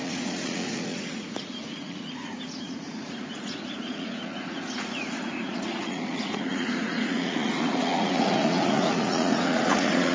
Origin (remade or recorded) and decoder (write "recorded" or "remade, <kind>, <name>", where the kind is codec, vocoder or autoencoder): remade, vocoder, Vocos